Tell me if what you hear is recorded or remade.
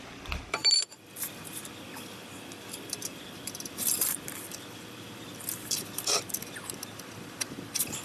remade